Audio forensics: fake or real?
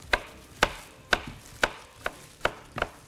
real